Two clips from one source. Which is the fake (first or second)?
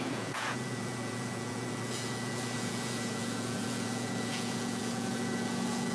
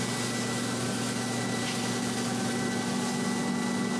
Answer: first